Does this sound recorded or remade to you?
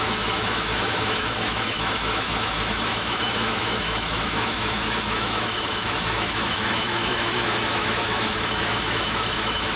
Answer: remade